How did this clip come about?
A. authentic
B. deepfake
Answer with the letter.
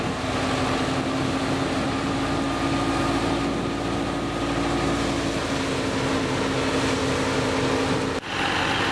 A